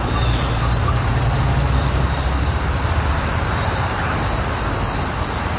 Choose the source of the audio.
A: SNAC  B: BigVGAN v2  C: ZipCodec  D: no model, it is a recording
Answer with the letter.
B